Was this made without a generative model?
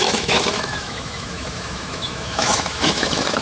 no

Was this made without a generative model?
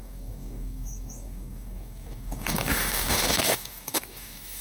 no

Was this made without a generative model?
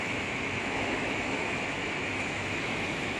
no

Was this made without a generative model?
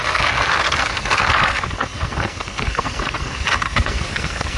no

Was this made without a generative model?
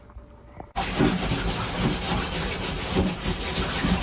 yes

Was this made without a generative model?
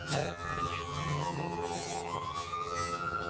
no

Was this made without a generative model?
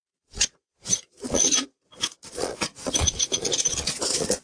no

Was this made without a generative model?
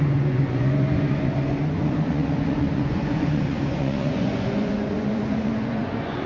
no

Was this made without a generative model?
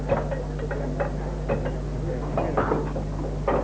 yes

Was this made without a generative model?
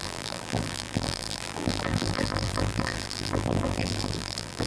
no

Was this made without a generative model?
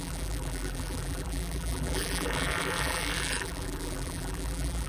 no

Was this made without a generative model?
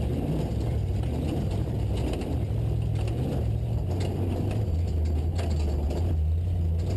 yes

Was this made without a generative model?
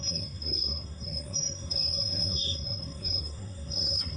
no